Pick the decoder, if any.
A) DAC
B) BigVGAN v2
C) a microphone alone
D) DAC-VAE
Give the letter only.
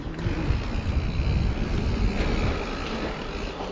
C